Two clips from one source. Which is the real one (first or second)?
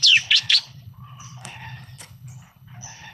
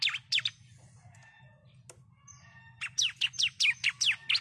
second